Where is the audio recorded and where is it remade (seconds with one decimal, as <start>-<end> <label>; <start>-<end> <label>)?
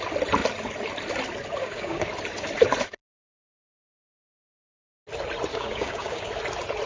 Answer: 0.0-1.6 recorded; 1.6-2.1 remade; 2.1-5.5 recorded; 5.5-6.3 remade; 6.3-6.9 recorded